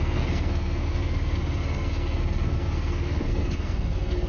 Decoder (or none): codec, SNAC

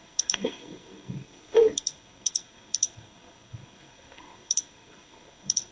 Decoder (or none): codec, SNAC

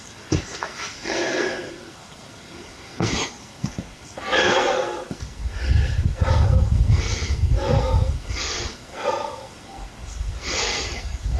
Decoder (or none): codec, SNAC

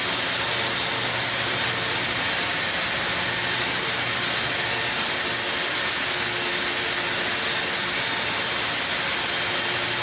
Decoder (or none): none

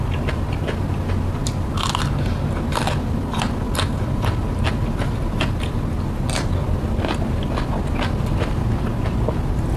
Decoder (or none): none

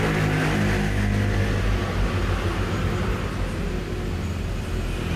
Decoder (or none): none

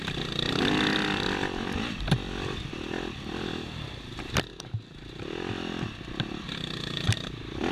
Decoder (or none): none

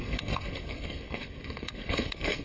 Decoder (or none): codec, SNAC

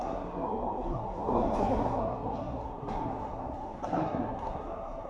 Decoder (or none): codec, SNAC